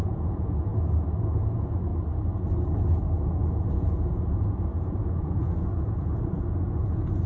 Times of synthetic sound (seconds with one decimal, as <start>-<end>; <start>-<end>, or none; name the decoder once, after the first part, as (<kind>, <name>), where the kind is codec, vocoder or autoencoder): 0.0-0.7 (vocoder, Vocos); 1.2-1.9; 3.2-7.3